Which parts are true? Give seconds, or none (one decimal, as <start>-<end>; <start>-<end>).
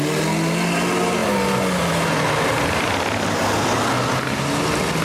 0.0-5.0